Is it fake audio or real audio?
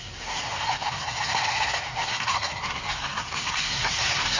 fake